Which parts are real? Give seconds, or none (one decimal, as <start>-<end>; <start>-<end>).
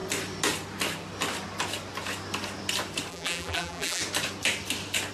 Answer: 0.0-3.1; 4.0-5.1